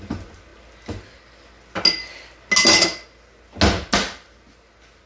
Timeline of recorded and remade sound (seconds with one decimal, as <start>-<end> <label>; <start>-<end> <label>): 0.0-5.1 recorded